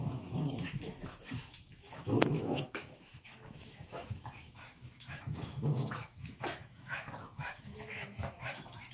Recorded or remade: remade